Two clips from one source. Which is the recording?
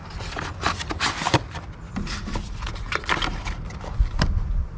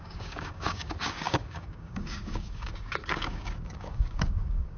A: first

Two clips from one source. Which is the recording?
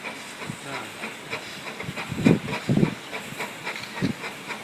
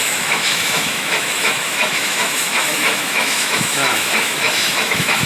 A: first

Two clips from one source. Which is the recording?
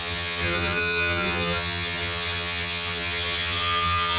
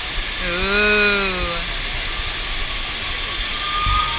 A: second